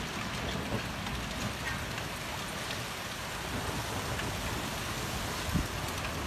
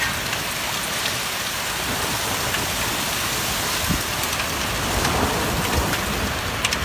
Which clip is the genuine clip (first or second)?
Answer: first